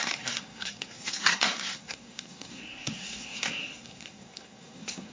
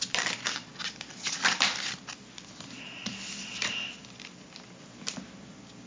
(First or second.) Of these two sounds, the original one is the second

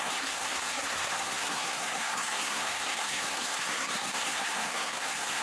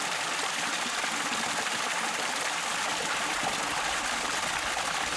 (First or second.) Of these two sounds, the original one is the second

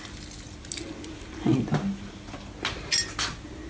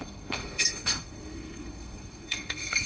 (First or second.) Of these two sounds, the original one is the first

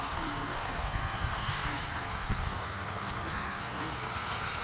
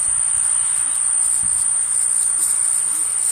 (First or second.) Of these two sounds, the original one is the second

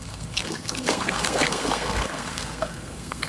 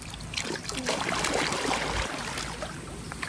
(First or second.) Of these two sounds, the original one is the second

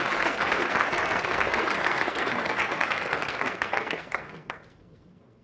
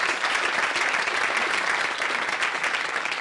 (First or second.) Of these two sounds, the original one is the second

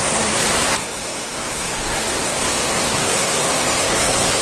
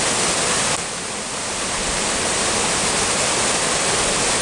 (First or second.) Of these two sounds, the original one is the second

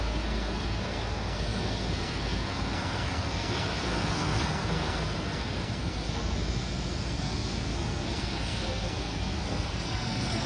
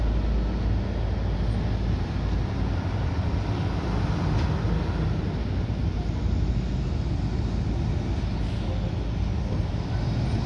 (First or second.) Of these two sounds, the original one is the second